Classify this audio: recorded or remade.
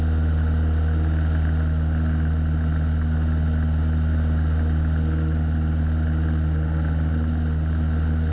recorded